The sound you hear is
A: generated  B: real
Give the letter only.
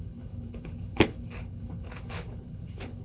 A